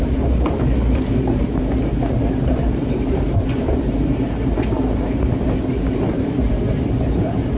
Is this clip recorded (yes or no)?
no